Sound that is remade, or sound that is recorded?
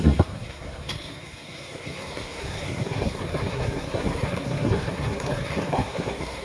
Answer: remade